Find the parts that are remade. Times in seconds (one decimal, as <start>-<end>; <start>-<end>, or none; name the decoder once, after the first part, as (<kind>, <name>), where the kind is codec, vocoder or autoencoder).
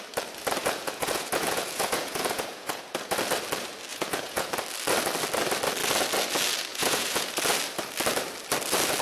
0.6-3.1 (vocoder, Vocos); 3.9-4.5; 6.7-7.3